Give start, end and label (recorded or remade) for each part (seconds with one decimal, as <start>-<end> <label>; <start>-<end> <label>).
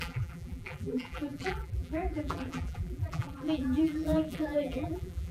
0.0-5.3 remade